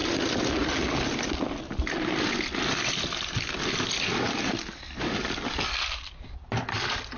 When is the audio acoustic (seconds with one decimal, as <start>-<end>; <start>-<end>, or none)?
0.0-7.2